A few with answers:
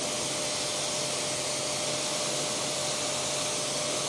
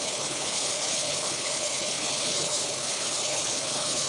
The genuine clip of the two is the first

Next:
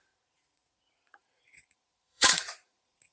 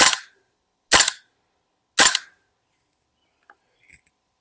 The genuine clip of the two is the second